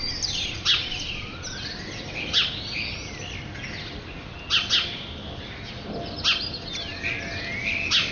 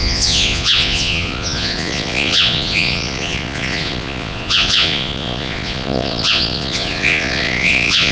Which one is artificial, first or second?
second